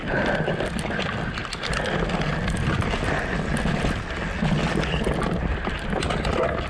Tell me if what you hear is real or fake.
real